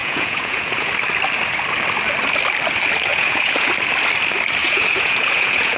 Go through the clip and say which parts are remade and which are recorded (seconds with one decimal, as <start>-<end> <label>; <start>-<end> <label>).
0.0-0.9 remade; 0.9-3.1 recorded; 3.1-3.7 remade; 3.7-4.6 recorded; 4.6-5.8 remade